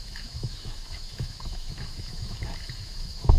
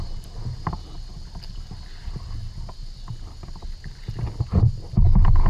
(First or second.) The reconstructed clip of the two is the first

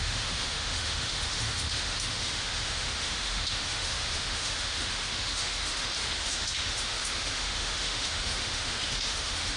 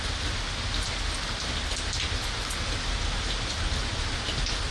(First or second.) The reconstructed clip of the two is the first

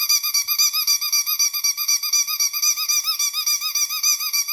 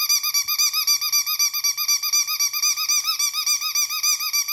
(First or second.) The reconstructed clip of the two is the first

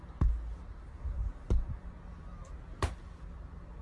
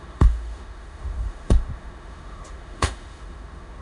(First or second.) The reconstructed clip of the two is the second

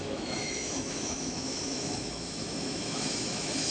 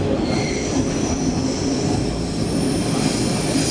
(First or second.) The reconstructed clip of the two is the first